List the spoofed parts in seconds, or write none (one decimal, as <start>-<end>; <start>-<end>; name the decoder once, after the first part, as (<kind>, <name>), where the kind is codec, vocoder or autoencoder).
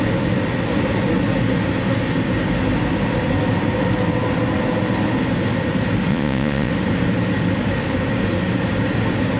6.1-6.7 (vocoder, Vocos)